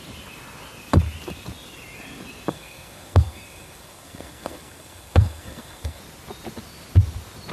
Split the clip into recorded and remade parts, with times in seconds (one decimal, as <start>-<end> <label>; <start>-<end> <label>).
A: 0.0-2.5 recorded; 2.5-6.0 remade; 6.0-7.5 recorded